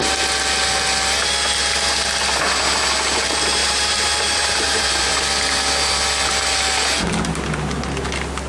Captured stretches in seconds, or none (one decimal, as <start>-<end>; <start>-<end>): 0.0-3.6; 5.1-8.5